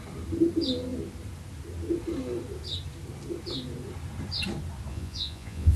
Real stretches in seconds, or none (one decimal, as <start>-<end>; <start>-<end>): 0.0-4.9